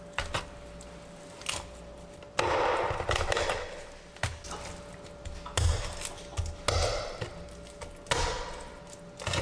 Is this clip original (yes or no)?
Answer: yes